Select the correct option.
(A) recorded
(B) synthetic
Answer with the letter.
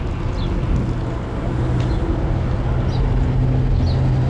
A